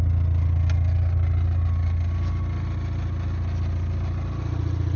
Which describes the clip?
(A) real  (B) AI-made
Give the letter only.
A